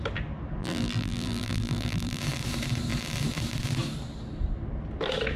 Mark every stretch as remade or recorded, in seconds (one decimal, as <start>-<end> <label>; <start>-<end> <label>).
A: 0.0-0.6 recorded; 0.6-2.2 remade; 2.2-5.4 recorded